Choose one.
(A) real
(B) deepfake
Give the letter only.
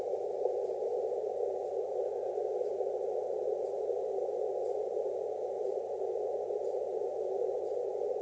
A